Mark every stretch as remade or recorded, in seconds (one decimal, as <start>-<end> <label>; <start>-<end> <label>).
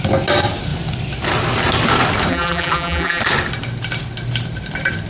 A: 0.0-2.3 recorded; 2.3-3.2 remade; 3.2-5.1 recorded